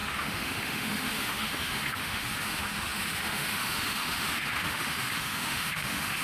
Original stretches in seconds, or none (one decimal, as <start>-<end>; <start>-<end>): none